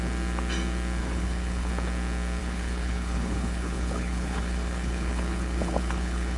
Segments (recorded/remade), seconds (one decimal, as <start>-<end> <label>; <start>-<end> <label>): 0.0-1.0 recorded; 1.0-1.7 remade; 1.7-2.4 recorded; 2.4-6.4 remade

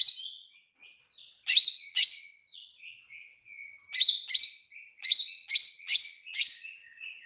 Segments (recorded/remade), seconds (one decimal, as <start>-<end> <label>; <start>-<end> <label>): 0.0-3.6 remade; 3.6-4.9 recorded; 4.9-7.3 remade

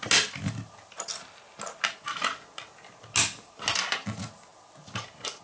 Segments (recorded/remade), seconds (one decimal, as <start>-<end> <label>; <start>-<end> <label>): 0.0-5.4 recorded